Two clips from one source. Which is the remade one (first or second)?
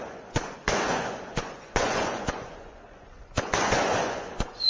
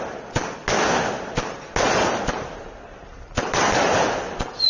first